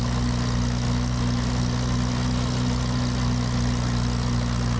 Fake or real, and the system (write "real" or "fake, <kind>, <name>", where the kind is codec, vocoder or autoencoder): real